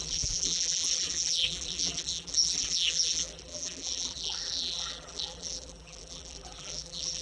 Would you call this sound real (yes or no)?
no